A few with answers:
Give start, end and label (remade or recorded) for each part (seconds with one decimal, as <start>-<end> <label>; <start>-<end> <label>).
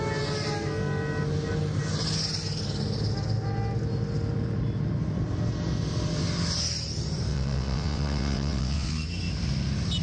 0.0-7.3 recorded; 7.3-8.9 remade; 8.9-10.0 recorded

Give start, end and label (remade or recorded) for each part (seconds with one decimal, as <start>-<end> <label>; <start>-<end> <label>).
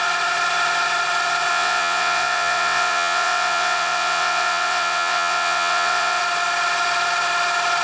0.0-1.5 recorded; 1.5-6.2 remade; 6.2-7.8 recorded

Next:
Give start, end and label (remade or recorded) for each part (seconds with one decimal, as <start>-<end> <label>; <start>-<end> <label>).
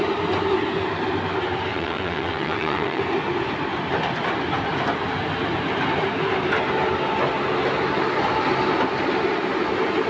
0.0-1.7 recorded; 1.7-3.0 remade; 3.0-10.1 recorded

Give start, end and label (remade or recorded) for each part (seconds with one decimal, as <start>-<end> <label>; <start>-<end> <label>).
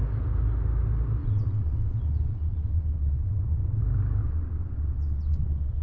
0.0-1.2 recorded; 1.2-3.8 remade; 3.8-4.2 recorded; 4.2-5.8 remade